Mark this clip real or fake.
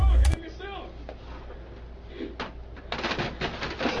real